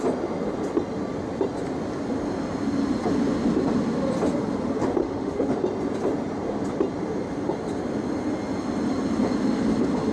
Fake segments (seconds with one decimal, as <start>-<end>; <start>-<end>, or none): 5.0-5.5

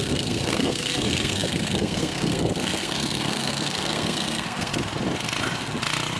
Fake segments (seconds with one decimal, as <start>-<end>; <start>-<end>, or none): 0.0-4.7